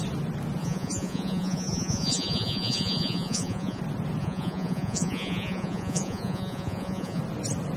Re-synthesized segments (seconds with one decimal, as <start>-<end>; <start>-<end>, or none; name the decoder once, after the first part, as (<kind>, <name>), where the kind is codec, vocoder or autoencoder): 0.6-3.8 (vocoder, Vocos); 4.2-7.2